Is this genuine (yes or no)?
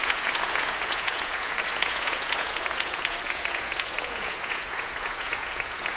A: no